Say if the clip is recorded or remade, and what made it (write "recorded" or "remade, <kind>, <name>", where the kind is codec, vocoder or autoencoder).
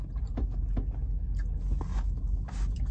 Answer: recorded